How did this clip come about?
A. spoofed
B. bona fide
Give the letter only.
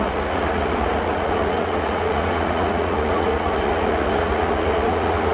A